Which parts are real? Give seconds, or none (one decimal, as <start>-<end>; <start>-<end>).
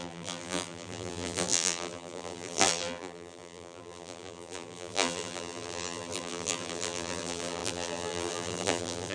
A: none